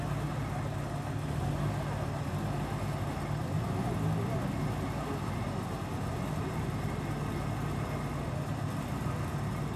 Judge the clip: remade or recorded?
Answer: recorded